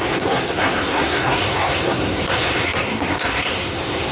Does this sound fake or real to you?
fake